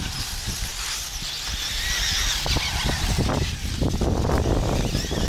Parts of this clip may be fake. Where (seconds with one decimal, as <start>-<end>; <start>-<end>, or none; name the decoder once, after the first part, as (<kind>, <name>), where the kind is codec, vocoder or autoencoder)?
none